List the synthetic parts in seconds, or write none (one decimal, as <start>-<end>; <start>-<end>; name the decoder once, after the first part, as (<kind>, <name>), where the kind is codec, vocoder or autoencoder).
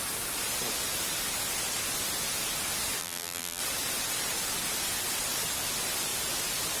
3.0-3.6 (vocoder, BigVGAN v2)